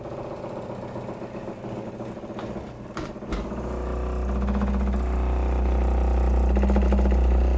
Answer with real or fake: real